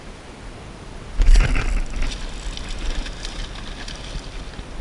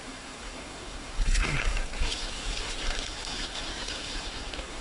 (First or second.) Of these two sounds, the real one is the first